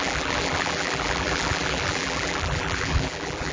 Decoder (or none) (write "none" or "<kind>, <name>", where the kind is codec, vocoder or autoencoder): vocoder, BigVGAN v2